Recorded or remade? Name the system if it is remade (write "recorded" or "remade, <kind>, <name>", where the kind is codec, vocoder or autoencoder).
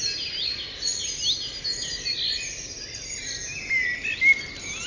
recorded